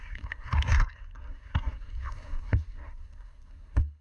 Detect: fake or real fake